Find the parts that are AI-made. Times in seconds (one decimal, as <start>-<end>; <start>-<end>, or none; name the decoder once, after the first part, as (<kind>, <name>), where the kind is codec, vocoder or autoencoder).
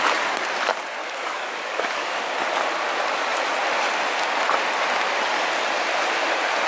1.0-2.3 (codec, DAC)